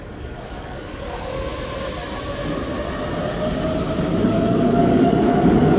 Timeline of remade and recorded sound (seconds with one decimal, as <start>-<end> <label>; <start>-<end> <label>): 0.0-1.5 remade; 1.5-3.8 recorded; 3.8-5.8 remade

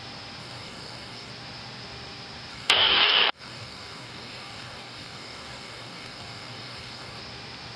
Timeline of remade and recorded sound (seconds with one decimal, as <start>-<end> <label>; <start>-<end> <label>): 0.0-0.4 recorded; 0.4-1.3 remade; 1.3-2.5 recorded; 2.5-7.2 remade; 7.2-7.8 recorded

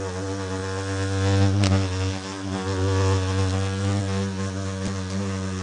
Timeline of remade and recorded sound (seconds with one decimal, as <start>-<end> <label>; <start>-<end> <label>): 0.0-5.6 recorded

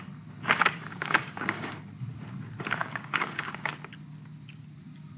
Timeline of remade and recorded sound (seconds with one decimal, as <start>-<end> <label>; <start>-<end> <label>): 0.0-0.8 recorded; 0.8-1.8 remade; 1.8-2.8 recorded; 2.8-3.7 remade; 3.7-5.2 recorded

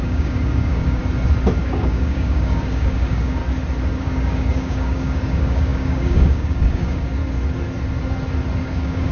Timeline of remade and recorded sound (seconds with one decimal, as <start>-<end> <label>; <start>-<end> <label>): 0.0-1.0 remade; 1.0-1.6 recorded; 1.6-3.4 remade; 3.4-4.0 recorded; 4.0-7.2 remade; 7.2-8.6 recorded; 8.6-9.1 remade